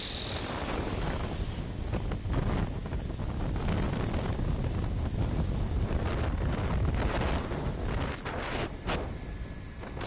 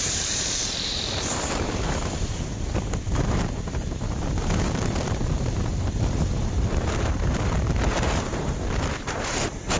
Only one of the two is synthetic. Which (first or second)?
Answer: second